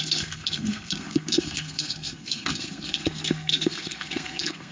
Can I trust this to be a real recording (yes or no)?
no